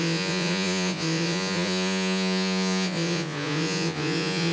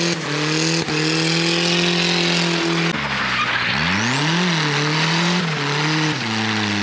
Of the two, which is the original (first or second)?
second